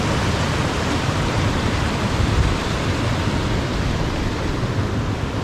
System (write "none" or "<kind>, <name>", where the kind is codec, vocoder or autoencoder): none